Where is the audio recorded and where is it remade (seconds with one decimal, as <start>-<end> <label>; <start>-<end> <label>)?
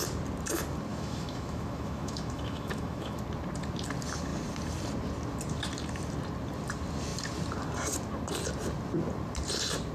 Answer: 0.0-0.9 recorded; 0.9-3.2 remade; 3.2-9.9 recorded